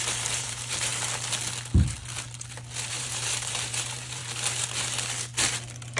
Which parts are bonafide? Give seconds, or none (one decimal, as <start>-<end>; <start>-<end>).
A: 0.9-2.9; 4.2-6.0